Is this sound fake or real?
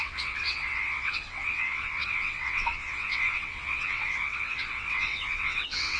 fake